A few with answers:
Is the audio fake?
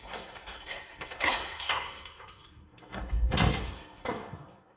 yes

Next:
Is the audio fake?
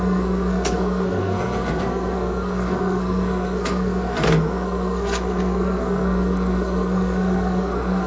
yes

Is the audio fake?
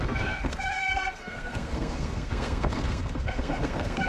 yes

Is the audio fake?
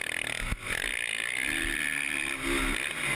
no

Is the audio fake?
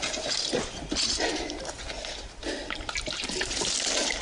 no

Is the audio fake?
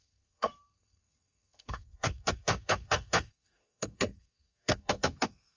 yes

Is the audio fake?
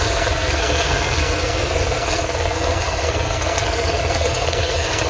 yes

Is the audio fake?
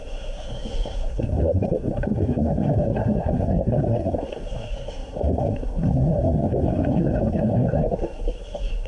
yes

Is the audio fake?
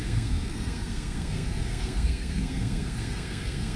yes